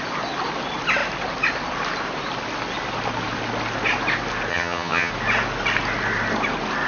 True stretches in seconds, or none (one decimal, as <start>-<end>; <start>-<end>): 0.0-4.5; 5.1-6.9